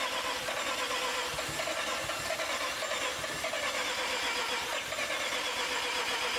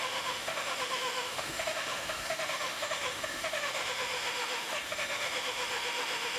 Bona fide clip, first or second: first